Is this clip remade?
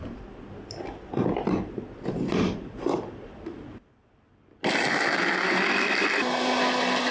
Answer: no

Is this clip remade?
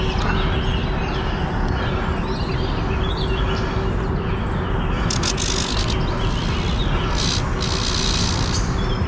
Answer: no